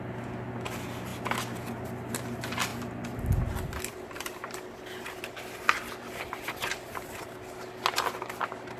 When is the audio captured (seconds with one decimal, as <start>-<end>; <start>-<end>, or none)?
0.0-8.8